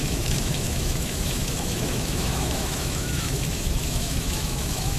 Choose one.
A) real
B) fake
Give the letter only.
B